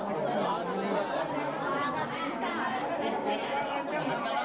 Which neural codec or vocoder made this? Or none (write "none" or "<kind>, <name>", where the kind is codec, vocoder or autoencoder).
none